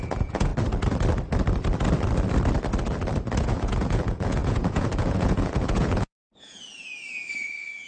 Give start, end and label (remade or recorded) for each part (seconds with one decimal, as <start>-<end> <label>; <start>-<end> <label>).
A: 0.0-0.5 remade; 0.5-3.4 recorded; 3.4-7.9 remade